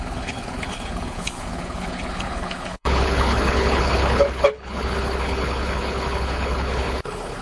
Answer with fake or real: fake